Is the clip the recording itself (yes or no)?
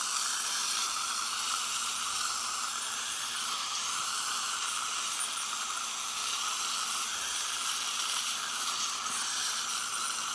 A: no